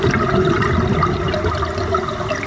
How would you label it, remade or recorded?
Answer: recorded